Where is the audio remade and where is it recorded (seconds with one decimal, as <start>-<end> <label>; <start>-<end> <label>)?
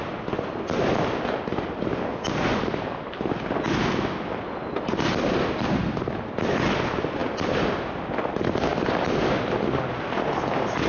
0.0-10.9 recorded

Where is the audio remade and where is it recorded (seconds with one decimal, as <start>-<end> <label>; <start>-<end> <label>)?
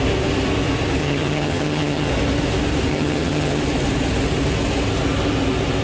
0.0-1.0 recorded; 1.0-2.1 remade; 2.1-2.9 recorded; 2.9-3.6 remade; 3.6-5.8 recorded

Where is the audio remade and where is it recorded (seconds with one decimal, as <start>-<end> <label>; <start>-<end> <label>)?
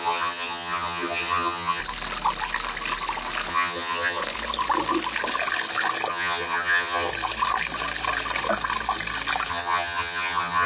0.0-1.8 remade; 1.8-3.5 recorded; 3.5-4.2 remade; 4.2-6.1 recorded; 6.1-7.1 remade; 7.1-9.5 recorded; 9.5-10.7 remade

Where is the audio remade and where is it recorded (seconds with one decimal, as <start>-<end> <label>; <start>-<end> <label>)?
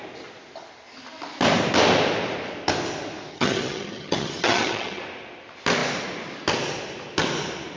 0.0-3.3 recorded; 3.3-5.0 remade; 5.0-7.8 recorded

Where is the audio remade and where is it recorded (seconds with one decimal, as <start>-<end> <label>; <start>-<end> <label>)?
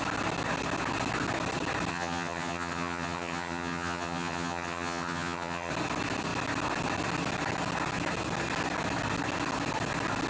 0.0-1.9 recorded; 1.9-5.7 remade; 5.7-10.3 recorded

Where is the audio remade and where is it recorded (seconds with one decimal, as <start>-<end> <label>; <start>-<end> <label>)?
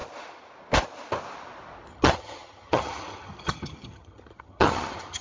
0.0-1.9 recorded; 1.9-5.2 remade